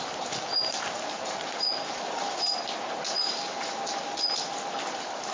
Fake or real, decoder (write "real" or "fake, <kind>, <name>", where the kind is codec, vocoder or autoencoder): real